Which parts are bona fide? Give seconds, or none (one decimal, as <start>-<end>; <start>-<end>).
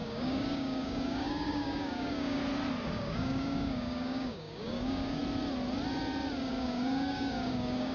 2.4-2.9; 5.2-6.5